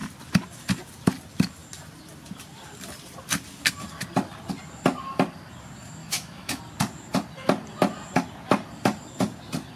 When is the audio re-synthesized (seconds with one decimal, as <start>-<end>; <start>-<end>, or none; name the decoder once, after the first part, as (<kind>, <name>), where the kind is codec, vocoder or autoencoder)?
6.0-6.6 (autoencoder, DAC-VAE)